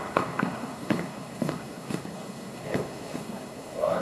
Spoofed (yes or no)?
yes